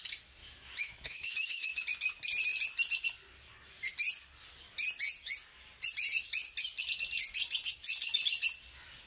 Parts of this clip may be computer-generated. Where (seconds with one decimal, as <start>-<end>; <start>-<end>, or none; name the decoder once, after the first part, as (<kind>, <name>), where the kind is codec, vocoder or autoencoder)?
0.4-1.8 (autoencoder, DAC-VAE)

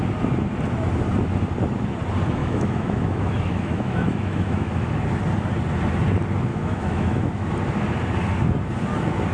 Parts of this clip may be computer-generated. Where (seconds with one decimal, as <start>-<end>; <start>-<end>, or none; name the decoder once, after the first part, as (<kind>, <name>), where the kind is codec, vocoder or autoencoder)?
2.4-4.9 (autoencoder, DAC-VAE); 6.5-7.5

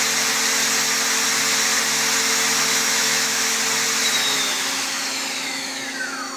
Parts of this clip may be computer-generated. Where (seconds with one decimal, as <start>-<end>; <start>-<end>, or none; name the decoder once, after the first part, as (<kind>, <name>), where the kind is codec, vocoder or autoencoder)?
2.7-3.6 (autoencoder, DAC-VAE); 4.2-6.4

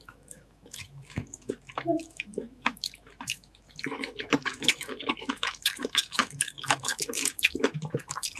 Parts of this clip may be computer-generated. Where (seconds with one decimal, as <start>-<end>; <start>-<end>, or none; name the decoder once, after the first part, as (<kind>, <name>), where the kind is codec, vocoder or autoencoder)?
0.0-8.4 (autoencoder, DAC-VAE)

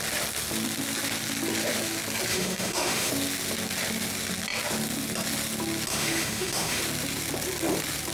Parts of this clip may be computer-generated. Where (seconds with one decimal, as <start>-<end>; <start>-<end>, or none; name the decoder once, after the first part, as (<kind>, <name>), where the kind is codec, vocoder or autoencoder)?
2.3-3.1 (autoencoder, DAC-VAE); 5.9-6.8